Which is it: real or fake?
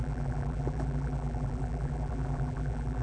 fake